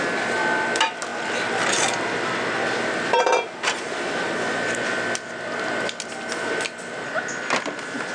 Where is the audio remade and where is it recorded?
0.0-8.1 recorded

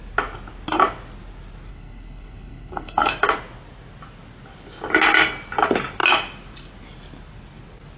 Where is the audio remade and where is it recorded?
0.0-1.7 recorded; 1.7-3.1 remade; 3.1-8.0 recorded

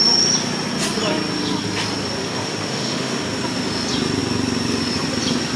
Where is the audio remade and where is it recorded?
0.0-2.2 recorded; 2.2-3.2 remade; 3.2-5.6 recorded